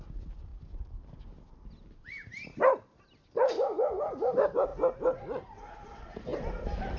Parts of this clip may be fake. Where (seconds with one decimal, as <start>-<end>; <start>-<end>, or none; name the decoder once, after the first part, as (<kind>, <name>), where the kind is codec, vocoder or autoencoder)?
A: none